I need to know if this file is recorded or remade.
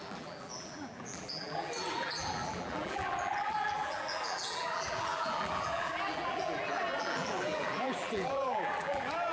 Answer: remade